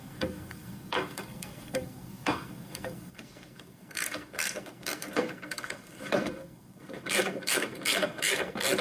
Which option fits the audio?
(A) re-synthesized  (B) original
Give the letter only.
A